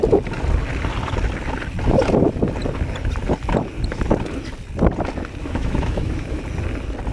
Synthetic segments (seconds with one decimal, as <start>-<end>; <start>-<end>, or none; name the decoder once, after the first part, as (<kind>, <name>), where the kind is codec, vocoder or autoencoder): 5.4-6.4 (autoencoder, DAC-VAE)